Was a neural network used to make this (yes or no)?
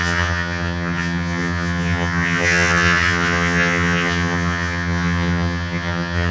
yes